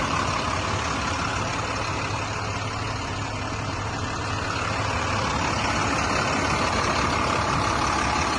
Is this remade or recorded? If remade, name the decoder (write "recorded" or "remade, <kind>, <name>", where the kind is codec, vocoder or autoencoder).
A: recorded